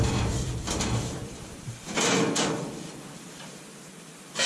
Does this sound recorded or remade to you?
recorded